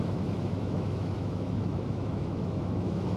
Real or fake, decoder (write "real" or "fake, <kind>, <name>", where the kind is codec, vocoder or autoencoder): fake, autoencoder, DAC-VAE